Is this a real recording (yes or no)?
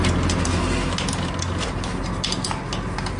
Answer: yes